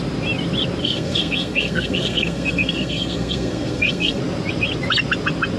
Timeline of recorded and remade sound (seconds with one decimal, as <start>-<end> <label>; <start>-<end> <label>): 0.0-0.8 recorded; 0.8-4.2 remade; 4.2-5.6 recorded